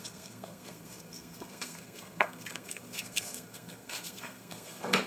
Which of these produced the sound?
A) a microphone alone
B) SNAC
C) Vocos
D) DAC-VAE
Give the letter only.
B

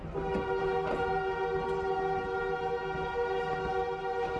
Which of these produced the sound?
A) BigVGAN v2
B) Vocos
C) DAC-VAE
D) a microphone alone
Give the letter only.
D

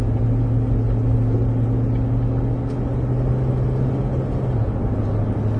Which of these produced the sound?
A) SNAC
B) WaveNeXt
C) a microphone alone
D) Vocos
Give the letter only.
C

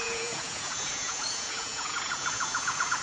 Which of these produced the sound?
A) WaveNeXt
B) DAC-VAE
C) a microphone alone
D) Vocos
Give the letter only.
D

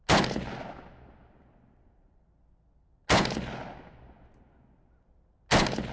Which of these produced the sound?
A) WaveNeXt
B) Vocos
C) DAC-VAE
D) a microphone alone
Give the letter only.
D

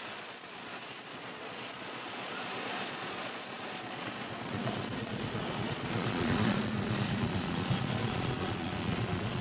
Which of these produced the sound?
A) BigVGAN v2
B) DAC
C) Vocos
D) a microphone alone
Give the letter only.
C